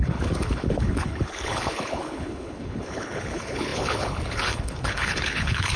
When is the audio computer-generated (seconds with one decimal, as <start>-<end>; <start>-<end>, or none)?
0.0-5.8